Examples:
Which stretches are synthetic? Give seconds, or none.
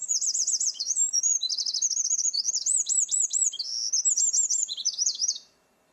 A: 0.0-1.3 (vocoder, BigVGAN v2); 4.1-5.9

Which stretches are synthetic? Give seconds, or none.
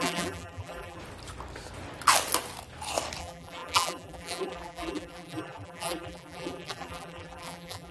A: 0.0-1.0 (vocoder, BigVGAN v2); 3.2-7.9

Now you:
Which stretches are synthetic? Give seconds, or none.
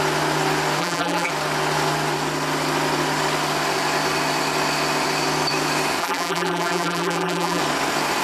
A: 0.8-1.3 (vocoder, BigVGAN v2); 6.0-7.6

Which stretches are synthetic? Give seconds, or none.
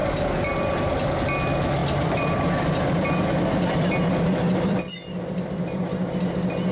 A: 0.0-0.8 (vocoder, BigVGAN v2); 1.8-5.8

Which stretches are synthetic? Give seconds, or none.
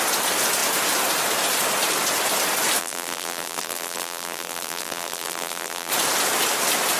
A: 2.8-5.9 (vocoder, BigVGAN v2)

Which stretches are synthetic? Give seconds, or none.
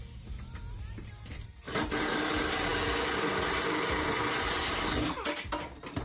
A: none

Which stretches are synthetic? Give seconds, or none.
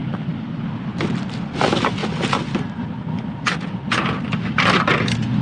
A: none